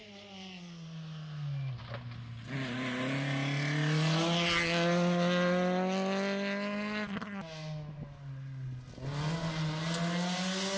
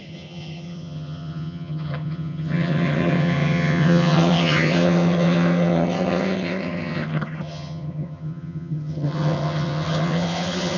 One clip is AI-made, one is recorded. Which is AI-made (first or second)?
second